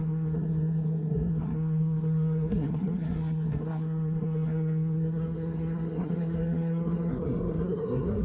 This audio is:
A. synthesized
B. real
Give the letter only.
A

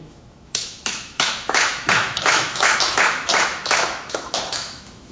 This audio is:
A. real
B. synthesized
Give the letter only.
B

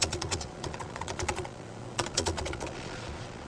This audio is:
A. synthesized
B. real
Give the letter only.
A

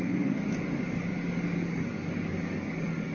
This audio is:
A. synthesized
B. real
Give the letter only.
A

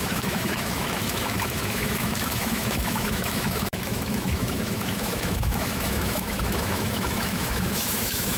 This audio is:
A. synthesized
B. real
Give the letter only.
A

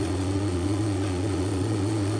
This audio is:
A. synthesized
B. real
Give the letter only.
A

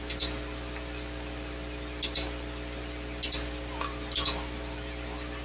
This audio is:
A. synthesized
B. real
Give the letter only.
B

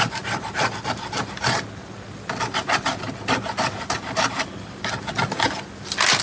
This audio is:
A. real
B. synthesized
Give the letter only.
A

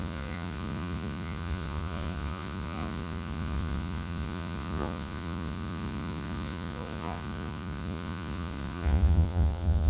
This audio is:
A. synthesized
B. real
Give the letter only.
A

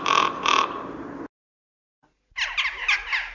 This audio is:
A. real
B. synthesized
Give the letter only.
A